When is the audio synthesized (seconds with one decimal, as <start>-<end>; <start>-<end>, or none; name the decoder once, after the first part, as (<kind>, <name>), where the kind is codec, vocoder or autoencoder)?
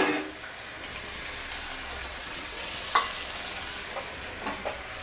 2.0-2.9 (vocoder, WaveNeXt)